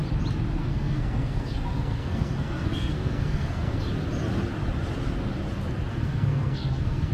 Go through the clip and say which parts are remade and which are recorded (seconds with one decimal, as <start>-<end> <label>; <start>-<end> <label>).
0.0-0.6 recorded; 0.6-3.8 remade; 3.8-5.9 recorded; 5.9-7.1 remade